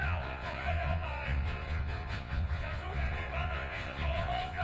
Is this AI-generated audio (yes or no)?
yes